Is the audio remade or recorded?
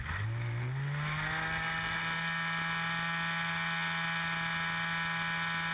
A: recorded